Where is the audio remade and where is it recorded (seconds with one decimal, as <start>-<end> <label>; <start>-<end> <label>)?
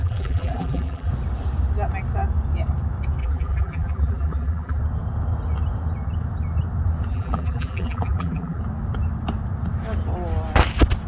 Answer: 0.0-1.1 remade; 1.1-3.2 recorded; 3.2-4.8 remade; 4.8-7.1 recorded; 7.1-8.6 remade; 8.6-11.1 recorded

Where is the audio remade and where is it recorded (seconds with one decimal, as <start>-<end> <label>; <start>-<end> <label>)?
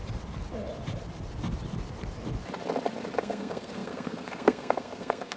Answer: 0.0-3.2 recorded; 3.2-5.4 remade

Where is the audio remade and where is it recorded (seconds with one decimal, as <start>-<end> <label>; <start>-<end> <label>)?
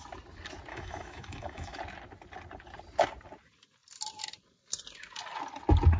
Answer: 0.0-0.7 recorded; 0.7-1.8 remade; 1.8-6.0 recorded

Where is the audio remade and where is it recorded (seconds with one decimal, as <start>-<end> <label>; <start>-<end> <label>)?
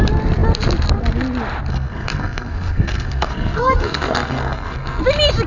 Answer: 0.0-1.7 recorded; 1.7-5.0 remade; 5.0-5.5 recorded